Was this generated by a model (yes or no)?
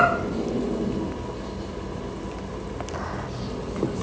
no